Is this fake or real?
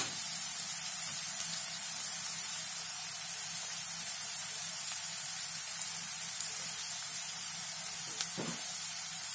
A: real